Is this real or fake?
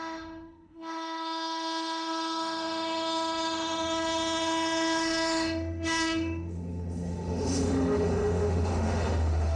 fake